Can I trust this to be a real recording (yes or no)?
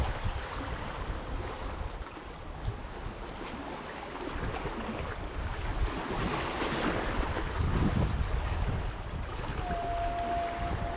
yes